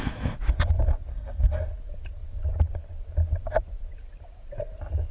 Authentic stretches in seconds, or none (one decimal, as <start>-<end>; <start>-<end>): 0.0-1.1; 1.6-5.1